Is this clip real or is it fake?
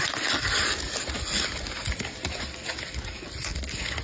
real